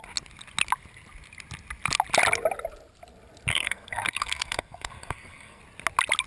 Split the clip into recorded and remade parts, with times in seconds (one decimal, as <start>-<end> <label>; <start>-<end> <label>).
0.0-3.5 recorded; 3.5-5.6 remade; 5.6-6.3 recorded

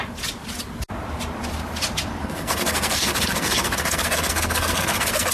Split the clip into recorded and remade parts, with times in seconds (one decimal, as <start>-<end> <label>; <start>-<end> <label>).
0.0-2.2 recorded; 2.2-5.3 remade

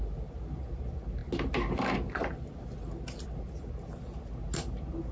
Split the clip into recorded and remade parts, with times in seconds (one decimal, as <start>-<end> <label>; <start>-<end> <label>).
0.0-5.1 recorded